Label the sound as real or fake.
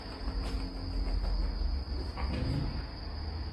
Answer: real